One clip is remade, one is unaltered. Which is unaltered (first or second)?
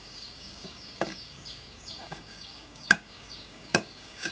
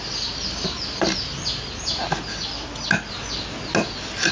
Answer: second